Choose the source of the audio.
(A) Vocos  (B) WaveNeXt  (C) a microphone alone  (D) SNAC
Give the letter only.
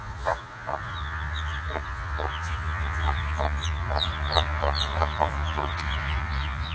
A